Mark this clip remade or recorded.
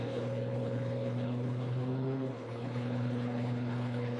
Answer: remade